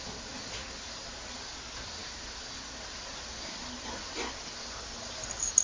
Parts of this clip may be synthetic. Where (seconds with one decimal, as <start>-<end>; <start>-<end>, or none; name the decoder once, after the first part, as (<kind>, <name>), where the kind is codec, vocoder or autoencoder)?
none